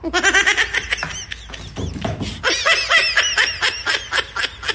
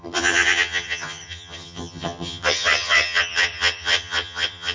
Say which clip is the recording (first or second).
first